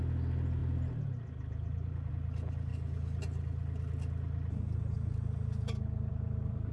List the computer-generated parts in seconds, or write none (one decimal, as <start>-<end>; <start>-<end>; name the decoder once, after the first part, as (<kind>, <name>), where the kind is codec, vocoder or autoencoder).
none